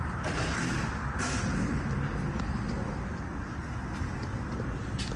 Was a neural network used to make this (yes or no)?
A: no